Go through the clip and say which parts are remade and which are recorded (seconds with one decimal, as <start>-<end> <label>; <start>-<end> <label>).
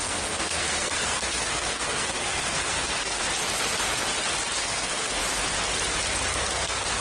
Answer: 0.0-3.2 remade; 3.2-4.6 recorded; 4.6-5.2 remade; 5.2-6.3 recorded; 6.3-7.0 remade